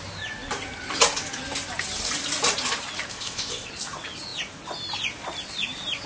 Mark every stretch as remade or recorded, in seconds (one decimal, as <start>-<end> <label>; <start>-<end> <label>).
0.0-3.1 recorded; 3.1-3.7 remade; 3.7-6.1 recorded